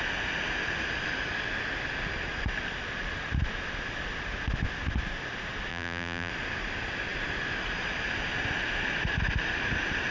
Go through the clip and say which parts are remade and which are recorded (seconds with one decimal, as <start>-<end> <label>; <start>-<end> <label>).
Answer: 0.0-5.7 recorded; 5.7-6.3 remade; 6.3-10.1 recorded

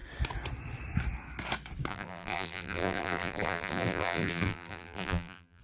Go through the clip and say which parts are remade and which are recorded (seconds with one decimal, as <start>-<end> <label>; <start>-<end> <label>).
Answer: 0.0-1.9 recorded; 1.9-5.6 remade